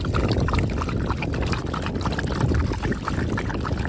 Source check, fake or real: real